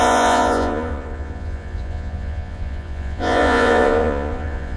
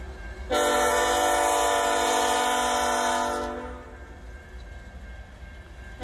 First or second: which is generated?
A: first